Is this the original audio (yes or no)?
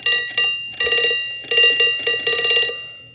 yes